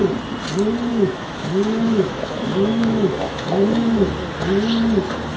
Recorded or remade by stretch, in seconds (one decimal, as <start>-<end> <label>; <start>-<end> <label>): 0.0-0.9 recorded; 0.9-4.1 remade; 4.1-5.4 recorded